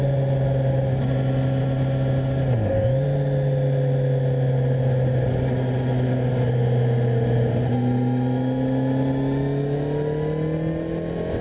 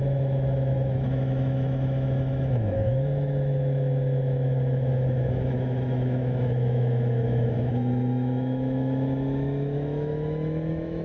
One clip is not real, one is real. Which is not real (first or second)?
second